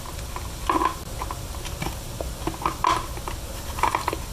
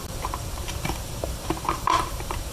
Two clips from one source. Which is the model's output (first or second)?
second